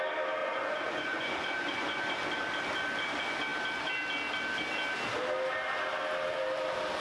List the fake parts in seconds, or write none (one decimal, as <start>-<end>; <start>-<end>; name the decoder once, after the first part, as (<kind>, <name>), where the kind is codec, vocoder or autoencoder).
0.4-2.0 (vocoder, Vocos)